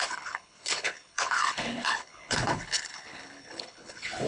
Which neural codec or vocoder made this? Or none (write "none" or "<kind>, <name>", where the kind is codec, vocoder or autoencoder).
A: codec, HILCodec